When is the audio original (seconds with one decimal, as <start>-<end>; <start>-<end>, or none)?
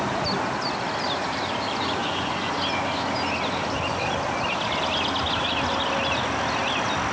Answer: 0.0-2.0; 2.5-7.1